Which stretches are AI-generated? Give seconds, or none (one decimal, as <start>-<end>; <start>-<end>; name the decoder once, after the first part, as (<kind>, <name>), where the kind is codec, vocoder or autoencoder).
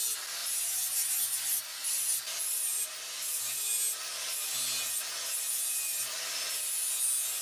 none